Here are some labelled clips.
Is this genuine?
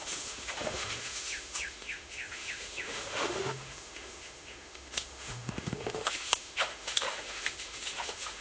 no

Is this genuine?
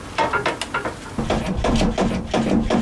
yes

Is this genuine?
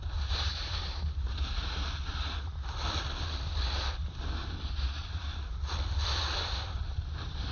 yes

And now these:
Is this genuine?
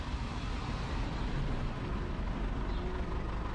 yes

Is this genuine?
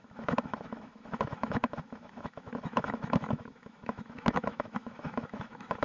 no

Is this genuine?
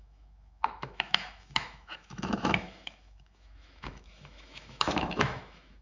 no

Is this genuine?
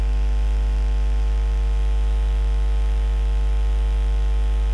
no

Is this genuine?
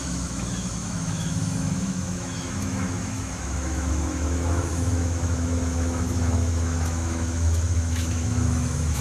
no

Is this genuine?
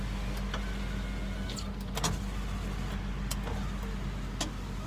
yes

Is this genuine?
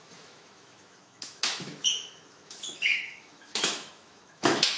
no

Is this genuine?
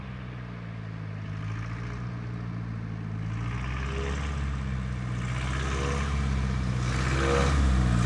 yes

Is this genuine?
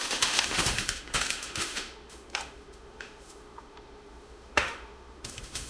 no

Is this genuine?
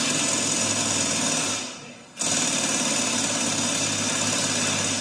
yes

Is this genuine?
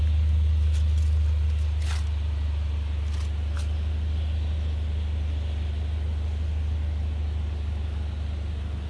yes